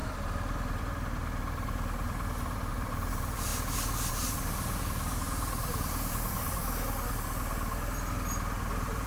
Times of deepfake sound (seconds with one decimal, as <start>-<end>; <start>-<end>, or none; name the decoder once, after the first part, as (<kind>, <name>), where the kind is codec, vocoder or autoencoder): 0.0-3.5 (vocoder, BigVGAN v2); 4.1-6.6; 8.6-9.1